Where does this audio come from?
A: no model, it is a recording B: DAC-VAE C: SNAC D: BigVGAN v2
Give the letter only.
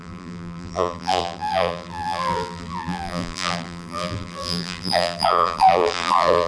D